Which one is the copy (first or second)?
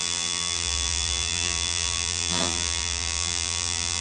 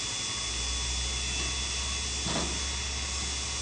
first